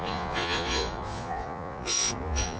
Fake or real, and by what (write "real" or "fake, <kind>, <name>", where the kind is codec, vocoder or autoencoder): fake, vocoder, Vocos